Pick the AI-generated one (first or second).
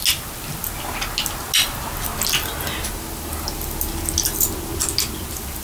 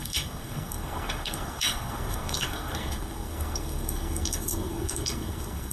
second